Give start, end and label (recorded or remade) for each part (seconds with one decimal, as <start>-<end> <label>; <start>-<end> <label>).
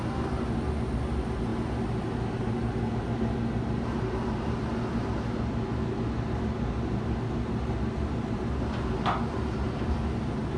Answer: 0.0-10.6 recorded